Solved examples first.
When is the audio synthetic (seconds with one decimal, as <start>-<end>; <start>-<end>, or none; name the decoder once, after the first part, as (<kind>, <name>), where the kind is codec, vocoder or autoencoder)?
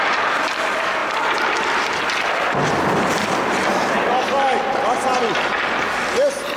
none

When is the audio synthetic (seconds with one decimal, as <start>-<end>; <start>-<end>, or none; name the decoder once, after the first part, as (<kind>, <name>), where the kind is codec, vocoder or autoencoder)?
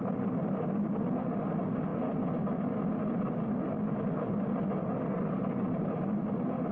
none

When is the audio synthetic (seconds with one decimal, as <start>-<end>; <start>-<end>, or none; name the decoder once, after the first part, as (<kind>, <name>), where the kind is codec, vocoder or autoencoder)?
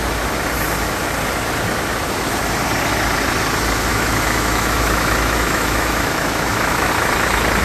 3.9-6.9 (autoencoder, DAC-VAE)